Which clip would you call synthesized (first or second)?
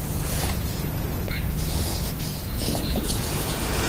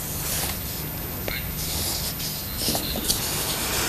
first